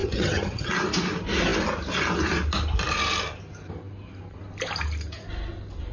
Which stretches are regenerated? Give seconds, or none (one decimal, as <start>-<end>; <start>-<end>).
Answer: 0.0-0.7